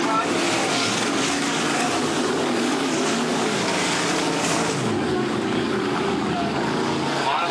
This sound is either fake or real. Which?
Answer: fake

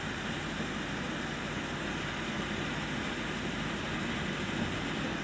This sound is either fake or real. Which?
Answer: real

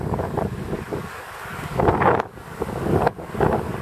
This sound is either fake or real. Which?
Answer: fake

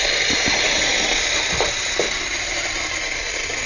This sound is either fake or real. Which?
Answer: real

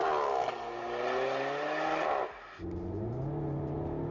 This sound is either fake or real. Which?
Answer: real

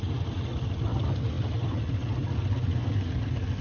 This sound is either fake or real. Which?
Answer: real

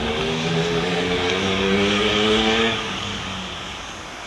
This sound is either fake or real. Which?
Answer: fake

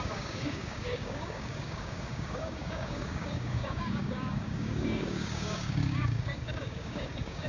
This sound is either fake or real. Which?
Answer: fake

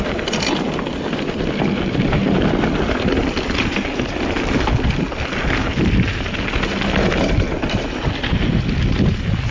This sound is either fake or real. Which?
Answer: real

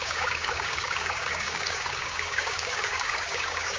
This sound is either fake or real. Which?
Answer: fake